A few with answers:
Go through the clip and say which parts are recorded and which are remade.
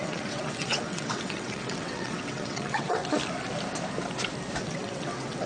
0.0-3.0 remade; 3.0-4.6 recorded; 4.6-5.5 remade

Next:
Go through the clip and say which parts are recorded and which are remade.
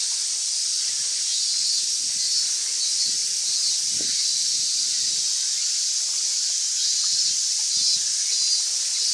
0.0-9.1 recorded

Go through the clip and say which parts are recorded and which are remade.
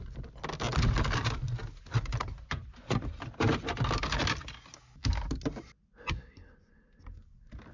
0.0-7.7 recorded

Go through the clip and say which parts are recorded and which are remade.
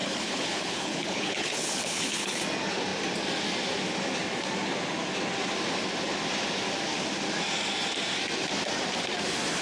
0.0-2.4 remade; 2.4-9.6 recorded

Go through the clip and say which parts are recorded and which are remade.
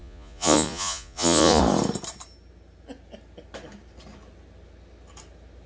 0.0-1.6 remade; 1.6-5.7 recorded